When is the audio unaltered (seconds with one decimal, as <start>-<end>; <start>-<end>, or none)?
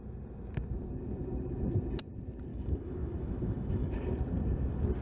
0.0-2.5; 4.0-5.0